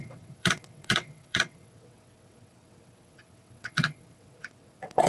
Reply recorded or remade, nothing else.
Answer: remade